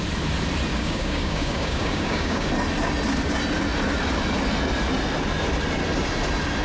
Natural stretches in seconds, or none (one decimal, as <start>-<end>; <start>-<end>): 0.0-0.7; 2.5-6.6